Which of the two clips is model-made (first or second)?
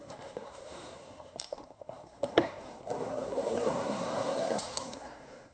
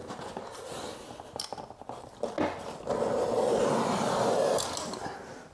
first